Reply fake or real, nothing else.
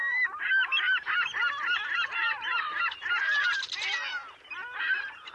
fake